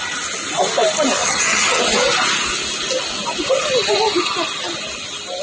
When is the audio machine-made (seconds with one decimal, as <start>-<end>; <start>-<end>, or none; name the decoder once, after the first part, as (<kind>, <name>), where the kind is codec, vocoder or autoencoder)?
1.2-1.8 (vocoder, HiFi-GAN)